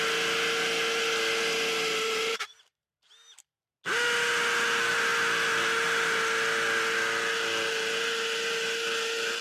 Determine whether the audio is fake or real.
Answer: real